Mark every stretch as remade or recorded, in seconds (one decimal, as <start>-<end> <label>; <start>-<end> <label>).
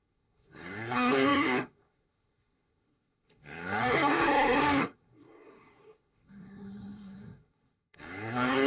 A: 0.0-8.7 remade